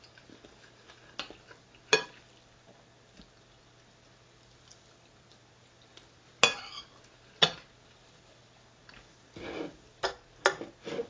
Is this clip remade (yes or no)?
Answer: no